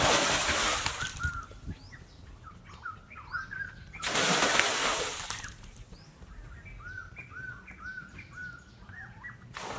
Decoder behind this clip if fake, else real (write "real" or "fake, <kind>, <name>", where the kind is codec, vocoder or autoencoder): real